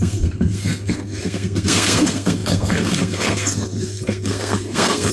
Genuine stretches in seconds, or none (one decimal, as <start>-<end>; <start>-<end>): none